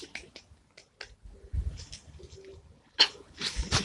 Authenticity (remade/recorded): recorded